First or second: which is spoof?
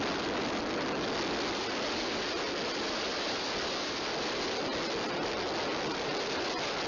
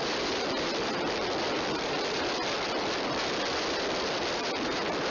second